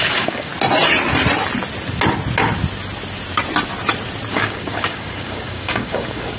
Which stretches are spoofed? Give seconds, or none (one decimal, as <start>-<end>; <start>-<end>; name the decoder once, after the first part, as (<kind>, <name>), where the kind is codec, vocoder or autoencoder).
0.0-0.5 (codec, DAC); 4.3-6.4